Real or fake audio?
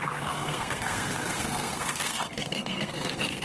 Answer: fake